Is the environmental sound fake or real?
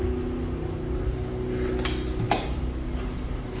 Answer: real